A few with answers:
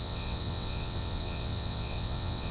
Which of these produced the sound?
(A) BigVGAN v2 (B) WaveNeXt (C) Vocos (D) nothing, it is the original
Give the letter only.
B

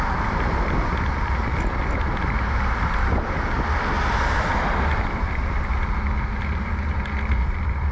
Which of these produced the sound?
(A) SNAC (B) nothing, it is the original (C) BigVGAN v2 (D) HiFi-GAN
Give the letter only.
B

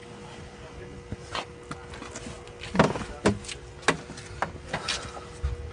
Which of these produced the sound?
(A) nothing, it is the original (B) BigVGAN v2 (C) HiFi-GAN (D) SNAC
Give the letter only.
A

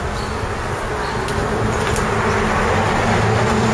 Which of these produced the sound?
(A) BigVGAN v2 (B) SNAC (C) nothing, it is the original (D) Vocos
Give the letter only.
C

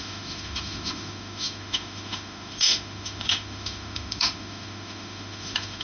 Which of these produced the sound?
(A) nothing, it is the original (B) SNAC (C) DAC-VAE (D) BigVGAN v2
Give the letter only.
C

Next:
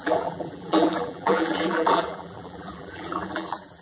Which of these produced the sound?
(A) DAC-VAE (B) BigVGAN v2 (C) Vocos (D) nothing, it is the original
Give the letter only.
B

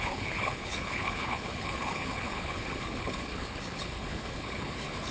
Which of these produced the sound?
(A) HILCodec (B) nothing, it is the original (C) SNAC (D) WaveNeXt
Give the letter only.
A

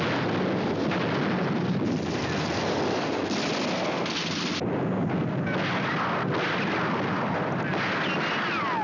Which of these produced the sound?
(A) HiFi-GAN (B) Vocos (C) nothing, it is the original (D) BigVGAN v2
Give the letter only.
C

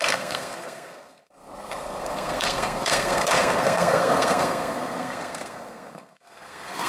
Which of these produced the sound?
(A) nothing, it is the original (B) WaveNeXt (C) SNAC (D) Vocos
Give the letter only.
C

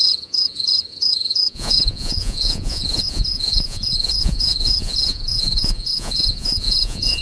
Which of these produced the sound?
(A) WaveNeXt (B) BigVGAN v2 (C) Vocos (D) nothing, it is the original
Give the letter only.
C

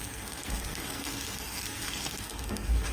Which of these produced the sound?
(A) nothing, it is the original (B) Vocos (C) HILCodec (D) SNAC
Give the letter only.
D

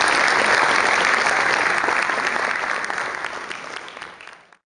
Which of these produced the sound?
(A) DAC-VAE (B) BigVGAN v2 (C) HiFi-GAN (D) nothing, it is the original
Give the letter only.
D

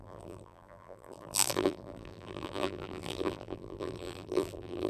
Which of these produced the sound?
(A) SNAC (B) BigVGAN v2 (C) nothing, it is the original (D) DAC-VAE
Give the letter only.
B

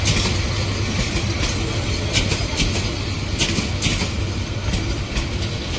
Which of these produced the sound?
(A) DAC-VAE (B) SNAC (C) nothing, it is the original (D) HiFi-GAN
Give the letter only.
C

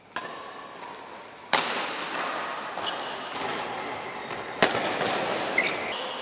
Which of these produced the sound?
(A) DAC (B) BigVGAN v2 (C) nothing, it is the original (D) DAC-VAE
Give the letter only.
C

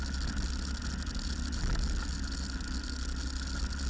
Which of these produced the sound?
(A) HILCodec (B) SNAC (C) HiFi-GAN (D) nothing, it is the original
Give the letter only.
D